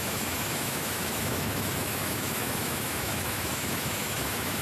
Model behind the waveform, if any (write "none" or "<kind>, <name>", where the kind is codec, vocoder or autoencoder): autoencoder, DAC-VAE